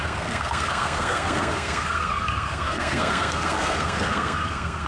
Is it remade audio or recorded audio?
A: remade